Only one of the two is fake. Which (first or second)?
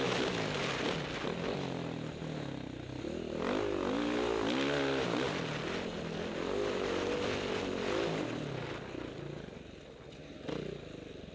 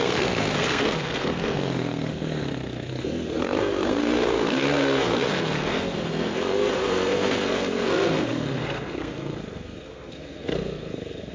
second